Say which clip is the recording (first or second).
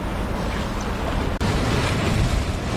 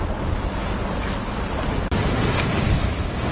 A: first